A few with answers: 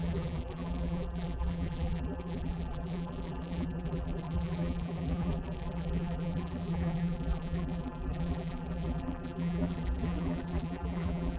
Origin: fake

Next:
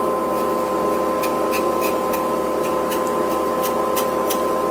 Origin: real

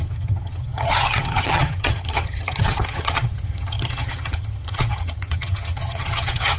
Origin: fake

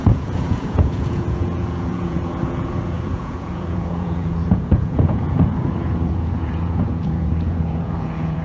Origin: fake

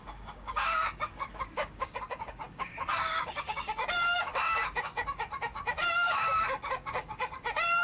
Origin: fake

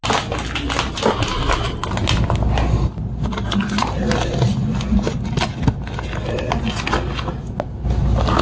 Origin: real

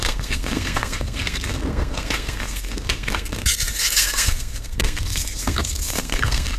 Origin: fake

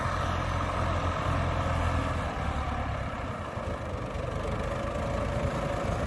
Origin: real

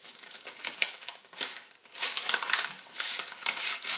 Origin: fake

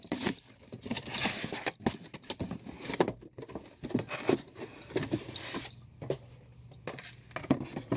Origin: real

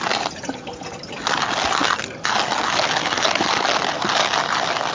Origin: real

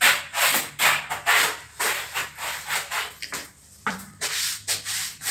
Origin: fake